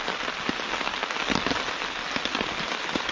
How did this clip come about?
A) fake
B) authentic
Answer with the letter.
B